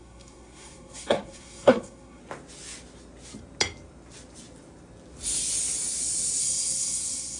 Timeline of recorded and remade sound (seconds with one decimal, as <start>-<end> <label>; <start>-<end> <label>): 0.0-2.2 remade; 2.2-6.4 recorded; 6.4-7.4 remade